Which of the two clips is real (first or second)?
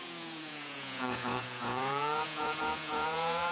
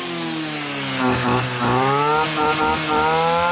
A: second